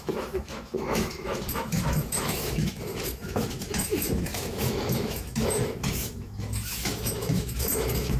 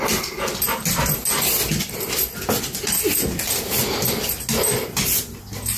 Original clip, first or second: second